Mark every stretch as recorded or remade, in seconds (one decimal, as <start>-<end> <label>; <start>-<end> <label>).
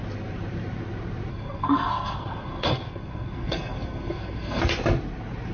0.0-1.3 recorded; 1.3-4.6 remade; 4.6-5.5 recorded